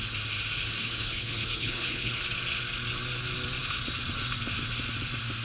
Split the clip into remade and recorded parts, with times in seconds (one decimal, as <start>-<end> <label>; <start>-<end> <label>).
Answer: 0.0-0.8 recorded; 0.8-2.2 remade; 2.2-5.4 recorded